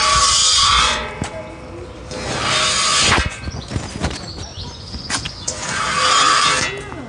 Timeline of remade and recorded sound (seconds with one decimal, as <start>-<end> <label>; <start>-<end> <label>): 0.0-0.4 recorded; 0.4-1.1 remade; 1.1-2.9 recorded; 2.9-3.7 remade; 3.7-4.5 recorded; 4.5-5.8 remade; 5.8-7.1 recorded